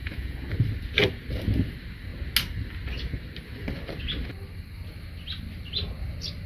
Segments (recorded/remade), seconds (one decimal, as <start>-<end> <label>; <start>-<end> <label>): 0.0-0.5 remade; 0.5-6.5 recorded